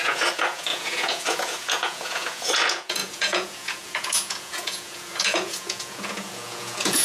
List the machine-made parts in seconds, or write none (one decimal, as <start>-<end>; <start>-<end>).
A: 0.0-7.0